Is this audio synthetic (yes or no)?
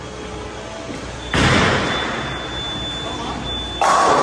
no